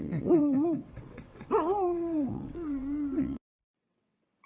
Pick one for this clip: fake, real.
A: fake